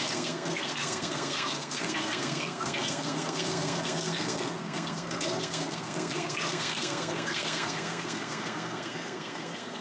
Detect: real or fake fake